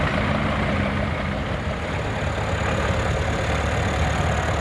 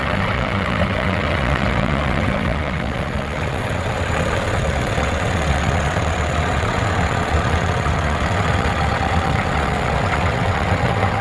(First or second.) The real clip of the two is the first